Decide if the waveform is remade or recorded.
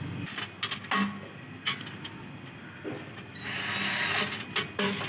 recorded